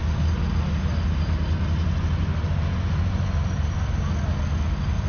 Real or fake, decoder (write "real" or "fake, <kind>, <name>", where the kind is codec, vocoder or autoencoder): real